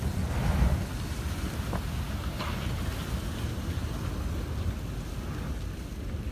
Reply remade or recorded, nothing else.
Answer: recorded